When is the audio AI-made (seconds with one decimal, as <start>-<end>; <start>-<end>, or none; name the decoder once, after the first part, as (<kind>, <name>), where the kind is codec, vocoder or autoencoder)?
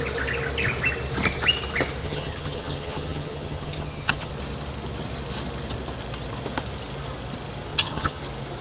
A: 2.0-4.3 (vocoder, HiFi-GAN); 7.7-8.2